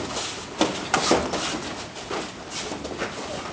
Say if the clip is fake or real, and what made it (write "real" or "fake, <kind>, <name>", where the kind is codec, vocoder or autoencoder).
real